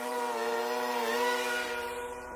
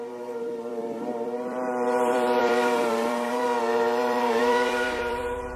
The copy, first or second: second